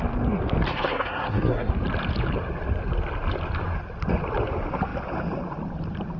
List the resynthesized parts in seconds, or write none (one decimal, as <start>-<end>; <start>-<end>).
0.7-1.7